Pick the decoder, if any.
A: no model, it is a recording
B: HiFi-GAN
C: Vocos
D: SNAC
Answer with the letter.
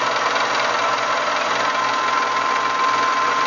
A